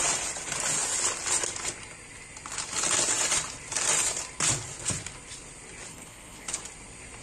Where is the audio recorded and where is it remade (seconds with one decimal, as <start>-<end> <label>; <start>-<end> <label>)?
0.0-5.9 recorded; 5.9-6.6 remade; 6.6-7.2 recorded